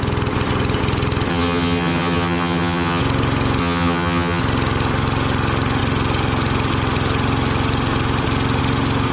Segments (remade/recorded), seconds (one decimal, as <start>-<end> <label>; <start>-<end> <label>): 0.0-1.3 recorded; 1.3-3.0 remade; 3.0-3.6 recorded; 3.6-4.4 remade; 4.4-9.1 recorded

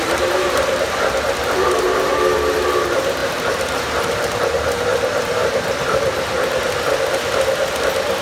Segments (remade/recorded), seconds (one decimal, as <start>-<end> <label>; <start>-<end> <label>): 0.0-2.1 remade; 2.1-2.8 recorded; 2.8-5.4 remade; 5.4-8.2 recorded

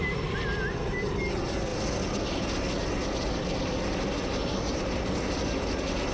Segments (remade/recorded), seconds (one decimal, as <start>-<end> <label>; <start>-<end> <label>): 0.0-6.1 recorded

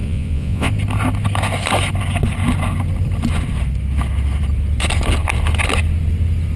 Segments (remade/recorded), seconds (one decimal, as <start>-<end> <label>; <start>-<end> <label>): 0.0-0.7 remade; 0.7-6.6 recorded

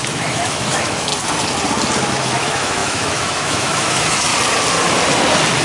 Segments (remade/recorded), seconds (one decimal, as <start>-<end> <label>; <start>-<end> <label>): 0.0-1.1 remade; 1.1-2.1 recorded; 2.1-4.3 remade; 4.3-5.6 recorded

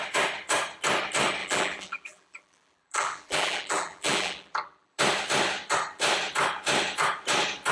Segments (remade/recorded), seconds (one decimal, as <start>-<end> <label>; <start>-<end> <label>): 0.0-1.4 recorded; 1.4-5.0 remade; 5.0-7.7 recorded

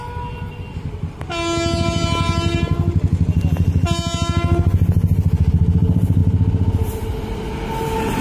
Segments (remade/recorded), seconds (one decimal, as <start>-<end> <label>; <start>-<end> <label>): 0.0-8.2 recorded

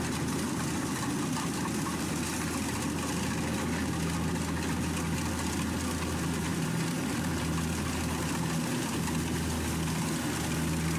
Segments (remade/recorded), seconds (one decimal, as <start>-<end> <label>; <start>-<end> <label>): 0.0-6.5 recorded; 6.5-7.4 remade; 7.4-11.0 recorded